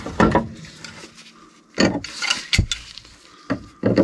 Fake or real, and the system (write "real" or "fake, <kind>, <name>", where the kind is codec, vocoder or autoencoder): real